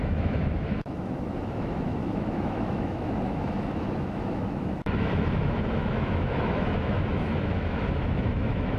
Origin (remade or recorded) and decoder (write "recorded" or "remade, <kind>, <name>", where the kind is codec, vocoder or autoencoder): remade, autoencoder, DAC-VAE